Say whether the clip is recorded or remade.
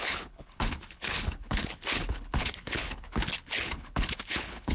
remade